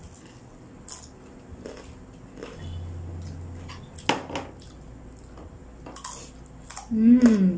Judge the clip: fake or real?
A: real